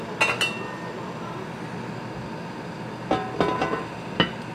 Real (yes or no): yes